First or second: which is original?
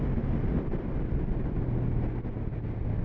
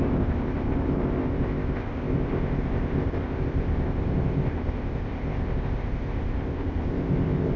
first